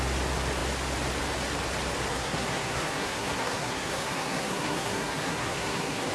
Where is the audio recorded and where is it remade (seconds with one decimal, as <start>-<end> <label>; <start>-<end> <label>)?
0.0-2.1 recorded; 2.1-6.1 remade